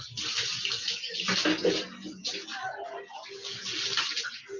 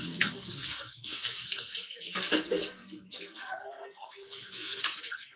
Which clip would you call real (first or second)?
first